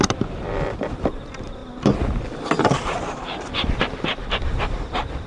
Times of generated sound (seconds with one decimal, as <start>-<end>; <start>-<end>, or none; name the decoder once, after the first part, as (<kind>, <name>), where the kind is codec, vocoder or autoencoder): none